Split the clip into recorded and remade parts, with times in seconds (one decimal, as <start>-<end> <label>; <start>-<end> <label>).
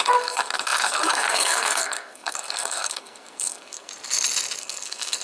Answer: 0.0-3.9 remade; 3.9-4.6 recorded; 4.6-5.2 remade